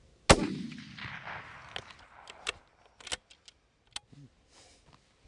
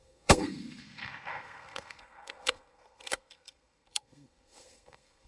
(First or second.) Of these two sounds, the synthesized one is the second